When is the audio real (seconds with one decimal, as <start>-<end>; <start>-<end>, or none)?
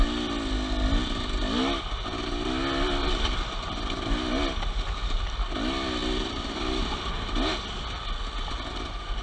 0.0-3.0; 3.9-6.0; 7.9-9.2